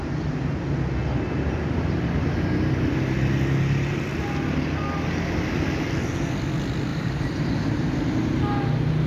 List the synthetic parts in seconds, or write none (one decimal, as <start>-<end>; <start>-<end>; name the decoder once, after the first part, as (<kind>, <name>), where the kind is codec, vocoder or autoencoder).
6.9-8.6 (vocoder, BigVGAN v2)